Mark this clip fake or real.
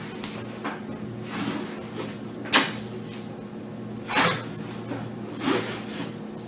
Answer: real